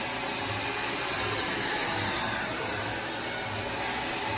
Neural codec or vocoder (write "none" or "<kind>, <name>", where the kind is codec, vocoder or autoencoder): none